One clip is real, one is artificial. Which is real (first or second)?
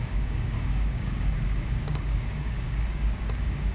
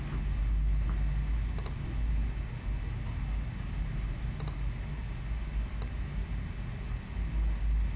second